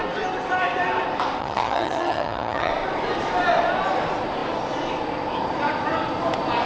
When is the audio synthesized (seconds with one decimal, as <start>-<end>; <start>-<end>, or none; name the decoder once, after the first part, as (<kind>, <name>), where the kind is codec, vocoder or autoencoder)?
1.4-2.7 (vocoder, HiFi-GAN)